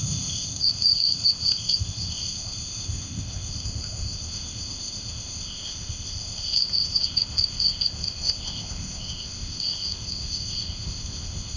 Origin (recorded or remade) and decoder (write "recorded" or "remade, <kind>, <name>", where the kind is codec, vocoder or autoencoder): remade, codec, ZipCodec